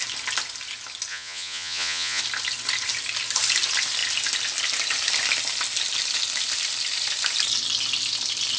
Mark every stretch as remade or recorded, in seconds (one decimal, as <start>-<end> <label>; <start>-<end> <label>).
0.0-1.1 recorded; 1.1-2.2 remade; 2.2-8.6 recorded